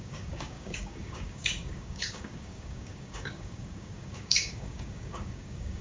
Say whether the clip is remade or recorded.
remade